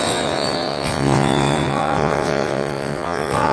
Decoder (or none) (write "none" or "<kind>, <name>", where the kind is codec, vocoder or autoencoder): vocoder, WaveNeXt